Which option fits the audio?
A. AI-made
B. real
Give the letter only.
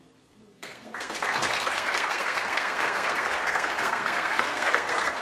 A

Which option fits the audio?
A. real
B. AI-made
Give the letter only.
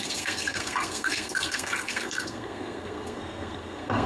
B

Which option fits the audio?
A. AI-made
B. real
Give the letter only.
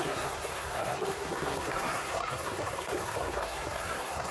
A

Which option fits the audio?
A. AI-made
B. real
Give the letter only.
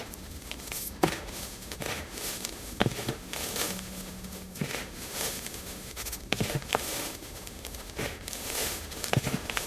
A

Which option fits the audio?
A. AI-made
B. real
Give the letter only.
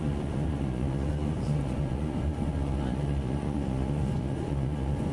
A